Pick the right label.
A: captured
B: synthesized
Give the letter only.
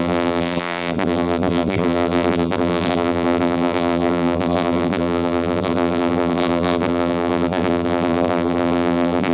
B